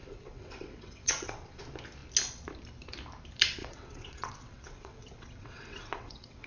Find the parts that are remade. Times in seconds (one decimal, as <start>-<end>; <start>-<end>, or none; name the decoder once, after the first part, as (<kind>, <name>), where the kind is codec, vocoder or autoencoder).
0.0-1.6 (vocoder, WaveNeXt); 3.6-6.5